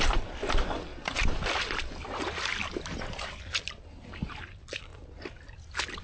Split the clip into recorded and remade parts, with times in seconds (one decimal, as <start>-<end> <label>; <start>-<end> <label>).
0.0-2.5 remade; 2.5-4.2 recorded; 4.2-4.9 remade; 4.9-6.0 recorded